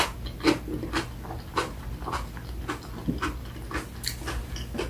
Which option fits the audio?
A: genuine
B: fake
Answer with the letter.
A